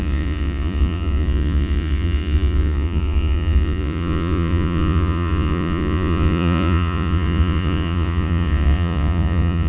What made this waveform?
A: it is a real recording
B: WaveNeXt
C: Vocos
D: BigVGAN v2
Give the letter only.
C